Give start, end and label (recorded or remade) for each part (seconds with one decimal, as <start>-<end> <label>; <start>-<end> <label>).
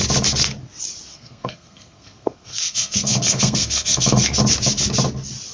0.0-1.1 recorded; 1.1-4.4 remade; 4.4-5.5 recorded